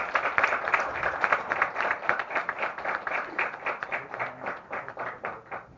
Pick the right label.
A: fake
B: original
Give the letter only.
B